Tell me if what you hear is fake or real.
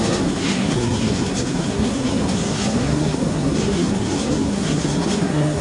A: fake